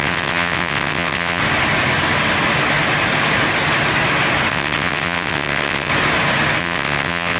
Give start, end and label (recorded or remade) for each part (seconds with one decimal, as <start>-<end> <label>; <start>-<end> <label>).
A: 0.0-1.4 remade; 1.4-4.5 recorded; 4.5-5.9 remade; 5.9-6.6 recorded; 6.6-7.4 remade